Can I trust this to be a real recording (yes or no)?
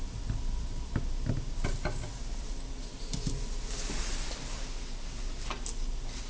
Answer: yes